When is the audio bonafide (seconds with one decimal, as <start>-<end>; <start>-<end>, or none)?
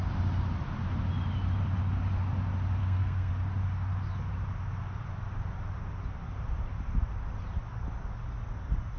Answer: 0.0-2.8; 3.3-9.0